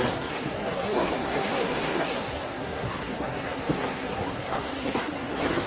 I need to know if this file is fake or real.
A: fake